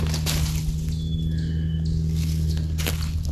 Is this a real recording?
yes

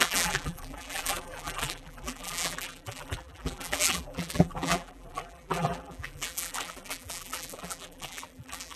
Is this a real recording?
no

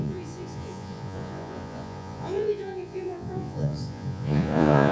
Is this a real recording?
no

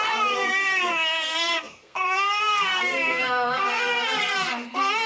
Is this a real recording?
no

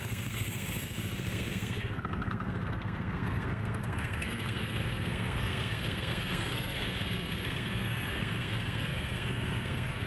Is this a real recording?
no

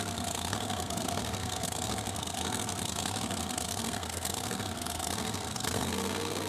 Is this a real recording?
no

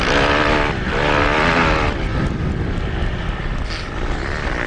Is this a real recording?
yes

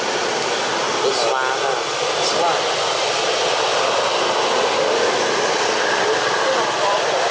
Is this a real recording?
yes